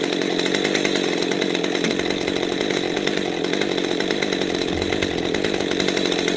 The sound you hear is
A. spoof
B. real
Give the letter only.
B